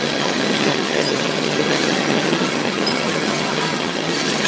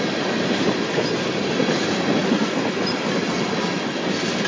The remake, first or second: first